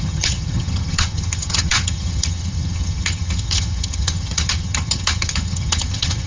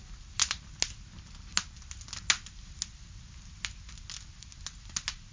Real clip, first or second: second